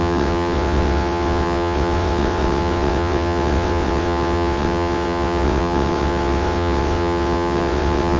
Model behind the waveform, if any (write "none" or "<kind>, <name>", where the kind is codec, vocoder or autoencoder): vocoder, WaveNeXt